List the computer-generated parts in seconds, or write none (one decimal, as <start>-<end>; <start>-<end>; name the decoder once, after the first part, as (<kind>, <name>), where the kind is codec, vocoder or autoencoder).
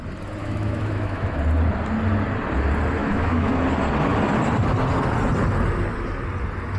0.4-1.4 (autoencoder, DAC-VAE); 3.0-3.6